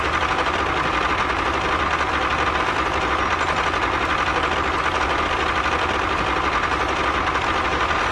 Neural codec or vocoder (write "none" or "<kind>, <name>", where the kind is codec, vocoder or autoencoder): none